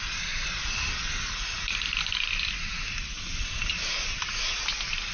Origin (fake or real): real